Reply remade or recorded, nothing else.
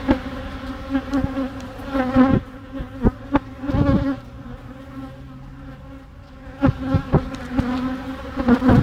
recorded